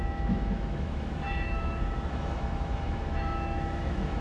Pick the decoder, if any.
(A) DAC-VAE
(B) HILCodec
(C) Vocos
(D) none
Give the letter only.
A